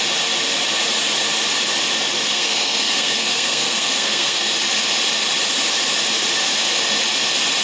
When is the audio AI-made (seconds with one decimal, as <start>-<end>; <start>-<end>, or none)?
2.3-4.5

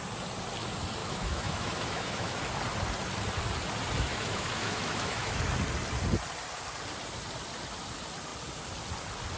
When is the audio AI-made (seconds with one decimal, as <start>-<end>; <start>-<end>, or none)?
1.0-2.4; 4.1-5.4

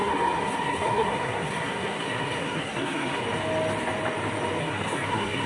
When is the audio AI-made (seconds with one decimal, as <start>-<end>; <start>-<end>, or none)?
0.0-3.2; 4.6-5.5

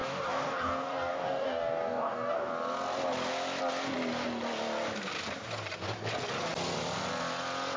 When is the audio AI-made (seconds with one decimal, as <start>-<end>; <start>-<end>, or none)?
0.0-2.5

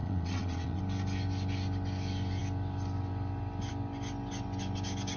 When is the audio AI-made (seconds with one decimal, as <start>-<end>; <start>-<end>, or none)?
0.0-0.8

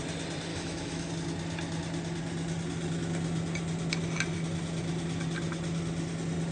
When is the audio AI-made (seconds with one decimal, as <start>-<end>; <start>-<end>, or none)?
0.5-1.1

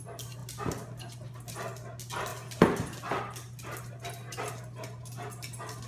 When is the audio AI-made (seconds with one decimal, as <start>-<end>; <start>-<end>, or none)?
none